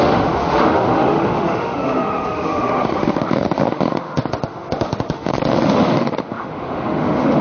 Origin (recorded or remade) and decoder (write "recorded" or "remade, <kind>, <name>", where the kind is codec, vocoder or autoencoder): remade, autoencoder, DAC-VAE